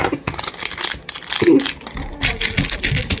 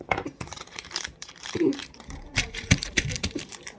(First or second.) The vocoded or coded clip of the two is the second